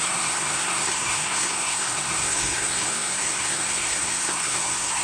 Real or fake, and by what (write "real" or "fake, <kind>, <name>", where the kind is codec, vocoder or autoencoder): fake, codec, SNAC